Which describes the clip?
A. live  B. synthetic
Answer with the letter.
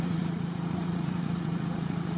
B